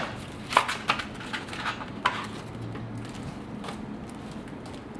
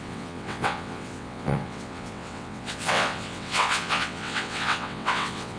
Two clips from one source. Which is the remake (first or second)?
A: second